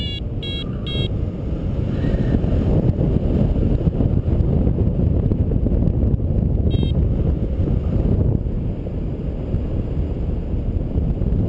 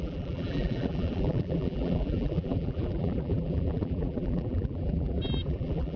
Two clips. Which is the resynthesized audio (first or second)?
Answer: second